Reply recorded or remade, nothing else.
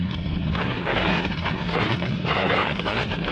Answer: remade